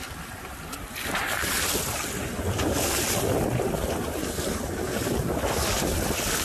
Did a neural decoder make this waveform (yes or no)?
no